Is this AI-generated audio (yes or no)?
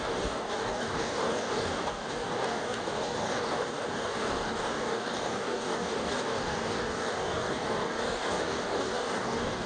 yes